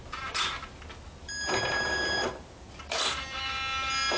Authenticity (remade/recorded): recorded